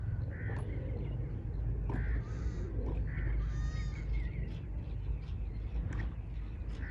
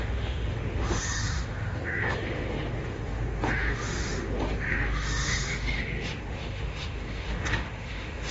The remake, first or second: second